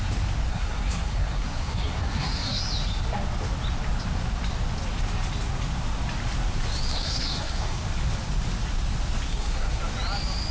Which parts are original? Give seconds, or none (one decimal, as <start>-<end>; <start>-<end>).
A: 0.0-0.5; 2.6-6.9; 7.8-9.3; 9.8-10.5